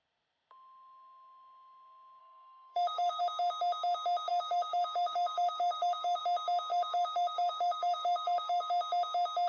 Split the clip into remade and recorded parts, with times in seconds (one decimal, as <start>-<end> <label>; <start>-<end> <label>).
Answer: 0.0-2.2 recorded; 2.2-3.2 remade; 3.2-4.3 recorded; 4.3-6.2 remade; 6.2-6.7 recorded; 6.7-8.7 remade; 8.7-9.5 recorded